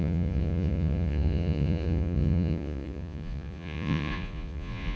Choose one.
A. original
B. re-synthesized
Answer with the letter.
B